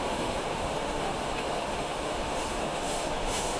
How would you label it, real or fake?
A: fake